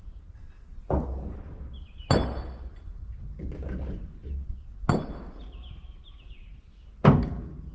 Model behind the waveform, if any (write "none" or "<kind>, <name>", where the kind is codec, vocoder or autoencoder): none